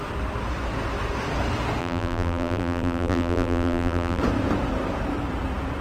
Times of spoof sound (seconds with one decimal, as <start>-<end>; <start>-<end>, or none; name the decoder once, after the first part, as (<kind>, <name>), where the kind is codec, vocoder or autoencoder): 1.8-4.2 (vocoder, BigVGAN v2)